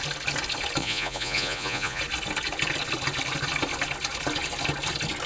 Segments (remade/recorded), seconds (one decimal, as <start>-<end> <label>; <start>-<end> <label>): 0.0-0.8 recorded; 0.8-2.0 remade; 2.0-5.3 recorded